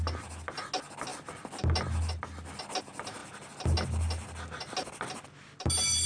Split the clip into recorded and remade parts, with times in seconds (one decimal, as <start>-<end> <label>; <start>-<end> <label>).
0.0-6.1 recorded